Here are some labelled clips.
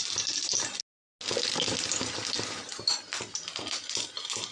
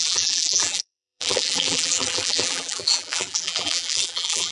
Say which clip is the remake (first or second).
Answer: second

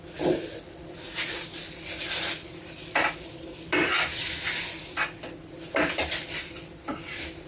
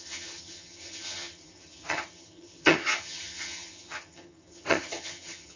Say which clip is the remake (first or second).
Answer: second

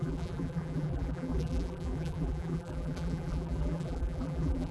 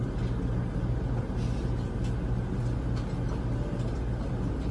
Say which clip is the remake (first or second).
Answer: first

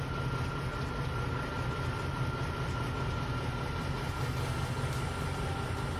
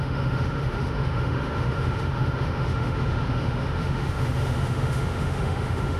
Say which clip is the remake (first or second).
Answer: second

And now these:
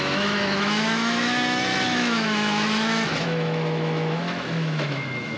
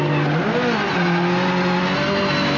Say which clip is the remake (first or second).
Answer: first